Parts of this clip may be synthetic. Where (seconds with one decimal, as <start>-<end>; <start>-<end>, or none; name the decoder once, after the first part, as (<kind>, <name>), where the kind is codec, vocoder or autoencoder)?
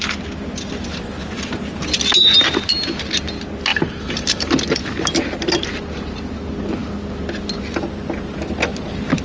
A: none